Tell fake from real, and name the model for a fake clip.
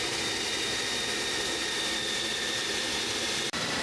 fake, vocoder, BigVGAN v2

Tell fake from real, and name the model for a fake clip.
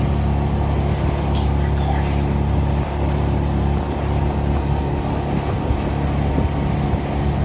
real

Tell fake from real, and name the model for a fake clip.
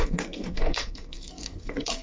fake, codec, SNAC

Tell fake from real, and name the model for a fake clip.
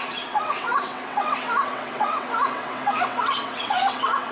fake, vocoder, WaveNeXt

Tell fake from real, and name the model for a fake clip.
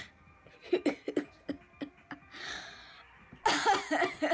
real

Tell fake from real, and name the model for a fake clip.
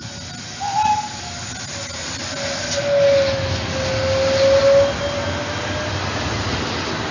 real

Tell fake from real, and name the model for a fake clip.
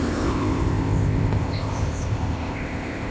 fake, codec, ZipCodec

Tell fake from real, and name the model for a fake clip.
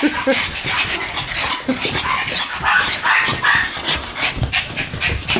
real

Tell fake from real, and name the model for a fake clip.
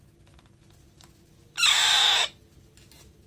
real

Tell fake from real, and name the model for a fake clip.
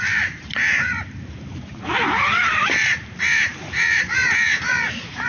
fake, vocoder, BigVGAN v2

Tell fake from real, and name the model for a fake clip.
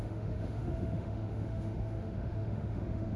fake, autoencoder, DAC-VAE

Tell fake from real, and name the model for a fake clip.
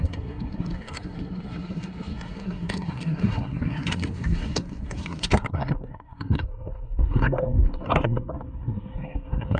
fake, codec, SNAC